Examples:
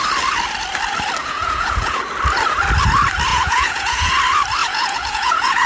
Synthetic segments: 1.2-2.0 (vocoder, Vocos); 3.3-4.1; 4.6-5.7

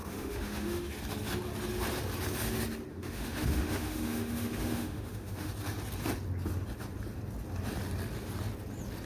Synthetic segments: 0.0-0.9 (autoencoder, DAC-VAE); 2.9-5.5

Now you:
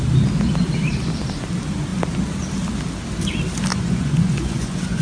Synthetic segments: 3.7-5.0 (vocoder, Vocos)